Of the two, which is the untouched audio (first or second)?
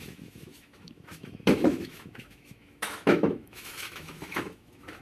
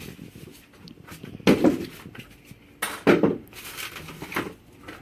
second